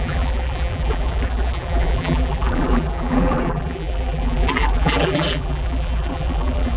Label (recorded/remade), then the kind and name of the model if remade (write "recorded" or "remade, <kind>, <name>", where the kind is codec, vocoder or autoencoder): remade, vocoder, BigVGAN v2